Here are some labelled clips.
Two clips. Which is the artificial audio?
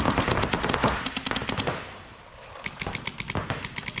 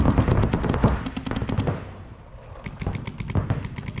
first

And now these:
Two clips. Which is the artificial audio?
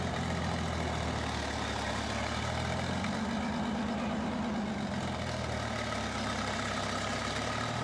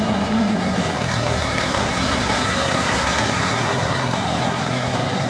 second